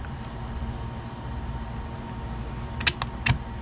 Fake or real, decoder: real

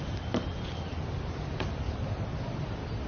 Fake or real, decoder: real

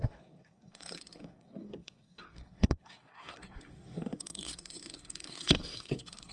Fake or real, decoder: fake, codec, SNAC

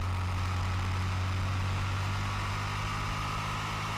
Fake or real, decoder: real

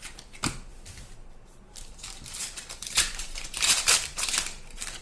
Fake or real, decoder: fake, vocoder, BigVGAN v2